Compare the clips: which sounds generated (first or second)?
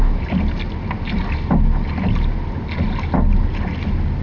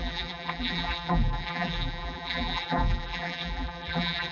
second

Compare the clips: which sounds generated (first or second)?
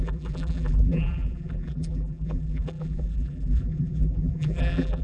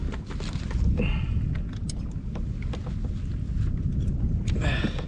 first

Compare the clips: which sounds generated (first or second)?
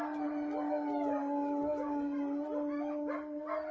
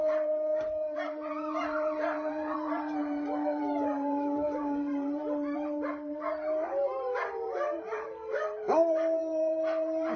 second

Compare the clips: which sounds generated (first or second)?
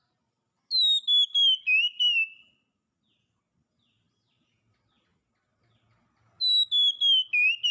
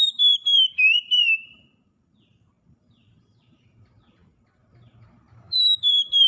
second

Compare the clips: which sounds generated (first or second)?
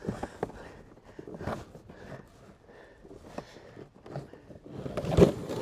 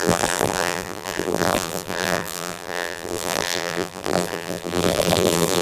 second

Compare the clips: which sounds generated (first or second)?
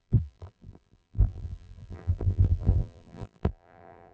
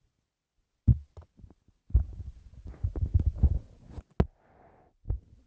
first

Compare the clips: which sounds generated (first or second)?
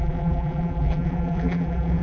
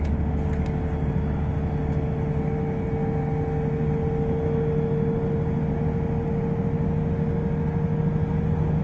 first